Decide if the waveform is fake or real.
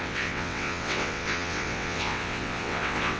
fake